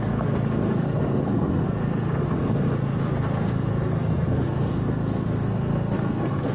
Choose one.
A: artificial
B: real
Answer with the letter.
A